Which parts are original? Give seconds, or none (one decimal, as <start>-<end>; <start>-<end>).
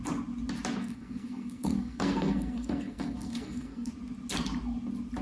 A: 0.0-0.8; 3.9-5.2